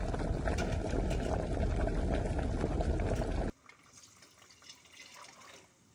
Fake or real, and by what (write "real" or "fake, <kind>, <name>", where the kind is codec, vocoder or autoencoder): real